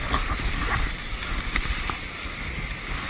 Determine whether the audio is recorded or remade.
recorded